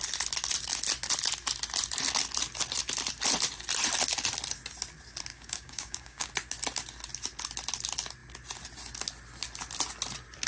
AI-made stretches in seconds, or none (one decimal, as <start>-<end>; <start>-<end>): 5.3-6.3